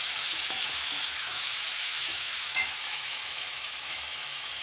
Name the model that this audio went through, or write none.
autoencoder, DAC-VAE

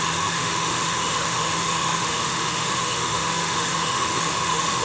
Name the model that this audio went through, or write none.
autoencoder, DAC-VAE